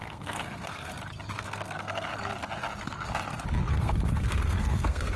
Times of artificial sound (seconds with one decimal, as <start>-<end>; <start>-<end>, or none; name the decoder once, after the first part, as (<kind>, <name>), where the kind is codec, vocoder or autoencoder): 0.0-0.9 (codec, SNAC); 1.4-2.1; 3.7-5.2